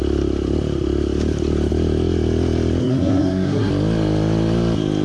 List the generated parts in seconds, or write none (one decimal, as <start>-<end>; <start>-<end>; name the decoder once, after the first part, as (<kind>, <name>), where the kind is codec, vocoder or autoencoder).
2.8-3.7 (codec, SNAC)